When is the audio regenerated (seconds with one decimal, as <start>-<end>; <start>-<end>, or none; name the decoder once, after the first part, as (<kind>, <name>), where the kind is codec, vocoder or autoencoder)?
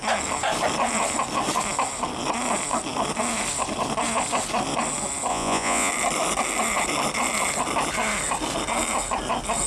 5.3-5.9 (vocoder, Vocos)